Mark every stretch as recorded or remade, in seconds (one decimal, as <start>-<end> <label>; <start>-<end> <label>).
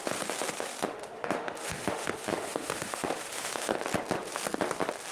0.0-0.5 recorded; 0.5-3.7 remade; 3.7-5.1 recorded